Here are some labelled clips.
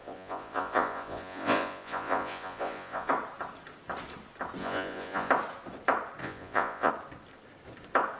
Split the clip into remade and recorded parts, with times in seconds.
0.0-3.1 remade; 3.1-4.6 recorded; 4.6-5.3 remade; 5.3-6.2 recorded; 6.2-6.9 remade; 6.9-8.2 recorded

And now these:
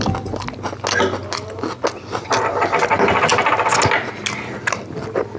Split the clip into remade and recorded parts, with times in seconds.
0.0-5.4 recorded

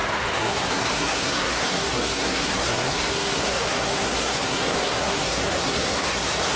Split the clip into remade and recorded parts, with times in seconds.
0.0-6.6 remade

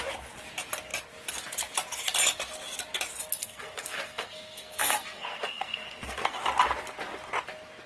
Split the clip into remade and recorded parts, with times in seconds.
0.0-3.4 recorded; 3.4-6.4 remade; 6.4-7.9 recorded

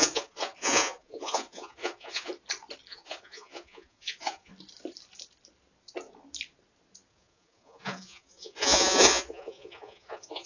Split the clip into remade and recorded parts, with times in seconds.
0.0-2.3 remade; 2.3-2.9 recorded; 2.9-4.5 remade; 4.5-7.1 recorded; 7.1-10.5 remade

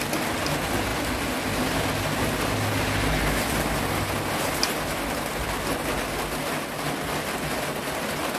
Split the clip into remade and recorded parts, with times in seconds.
0.0-8.4 recorded

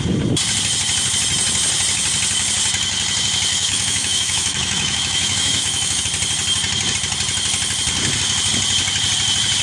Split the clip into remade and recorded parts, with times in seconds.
0.0-3.5 recorded; 3.5-6.0 remade; 6.0-9.6 recorded

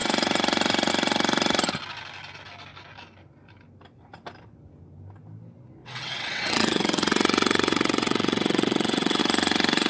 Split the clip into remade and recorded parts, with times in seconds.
0.0-5.8 recorded; 5.8-9.2 remade; 9.2-9.9 recorded